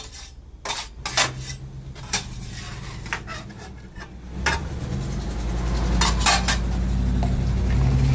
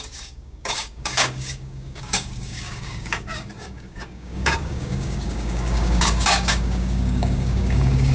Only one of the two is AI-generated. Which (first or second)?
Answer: second